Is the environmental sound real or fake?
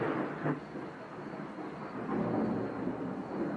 real